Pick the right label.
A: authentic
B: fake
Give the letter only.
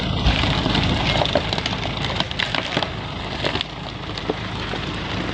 A